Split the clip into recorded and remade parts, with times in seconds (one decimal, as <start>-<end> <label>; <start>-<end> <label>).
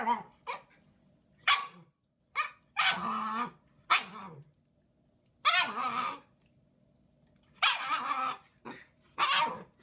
0.0-1.6 recorded; 1.6-2.2 remade; 2.2-9.8 recorded